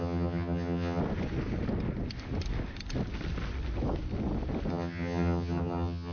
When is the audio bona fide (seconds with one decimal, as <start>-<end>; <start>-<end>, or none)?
1.0-4.7